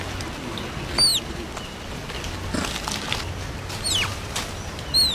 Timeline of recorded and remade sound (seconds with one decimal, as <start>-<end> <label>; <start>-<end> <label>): 0.0-5.1 recorded

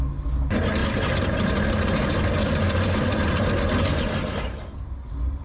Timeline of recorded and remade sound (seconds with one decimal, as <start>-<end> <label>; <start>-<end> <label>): 0.0-5.4 recorded

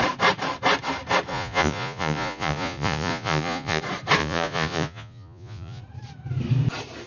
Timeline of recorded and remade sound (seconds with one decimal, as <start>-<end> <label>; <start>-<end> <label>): 0.0-1.3 recorded; 1.3-3.8 remade; 3.8-4.2 recorded; 4.2-5.8 remade; 5.8-7.1 recorded